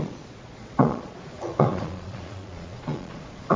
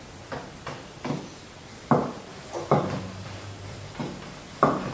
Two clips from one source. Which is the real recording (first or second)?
second